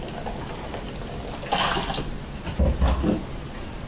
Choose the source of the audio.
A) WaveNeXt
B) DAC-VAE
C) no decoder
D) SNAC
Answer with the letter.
C